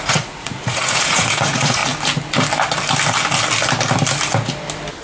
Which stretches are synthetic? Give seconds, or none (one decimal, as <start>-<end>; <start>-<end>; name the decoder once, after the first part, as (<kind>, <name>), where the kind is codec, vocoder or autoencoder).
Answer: 0.0-1.8 (vocoder, Vocos)